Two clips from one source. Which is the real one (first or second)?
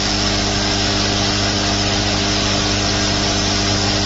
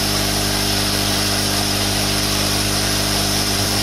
first